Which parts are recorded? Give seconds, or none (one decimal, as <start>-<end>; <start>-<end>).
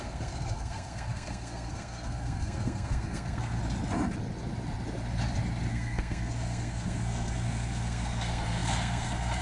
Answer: 3.6-5.7